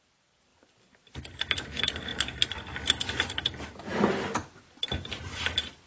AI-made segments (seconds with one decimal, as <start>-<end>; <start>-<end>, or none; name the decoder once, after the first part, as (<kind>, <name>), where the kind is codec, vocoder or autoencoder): none